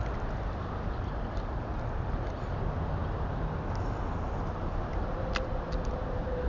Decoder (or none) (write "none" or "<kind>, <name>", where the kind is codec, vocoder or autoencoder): none